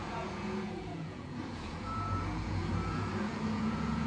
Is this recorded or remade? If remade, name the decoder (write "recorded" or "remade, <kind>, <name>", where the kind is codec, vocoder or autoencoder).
remade, vocoder, Vocos